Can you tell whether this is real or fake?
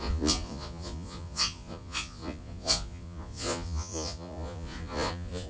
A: fake